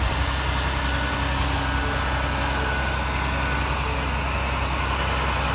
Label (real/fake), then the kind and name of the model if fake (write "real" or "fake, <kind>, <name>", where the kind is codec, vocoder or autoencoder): real